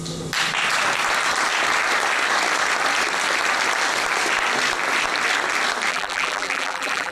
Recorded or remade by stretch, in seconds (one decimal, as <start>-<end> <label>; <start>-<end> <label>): 0.0-5.9 recorded; 5.9-7.1 remade